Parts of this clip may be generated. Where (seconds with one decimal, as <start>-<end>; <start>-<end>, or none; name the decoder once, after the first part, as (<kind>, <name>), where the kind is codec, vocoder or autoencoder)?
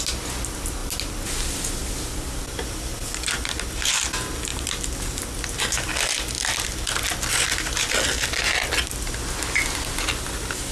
none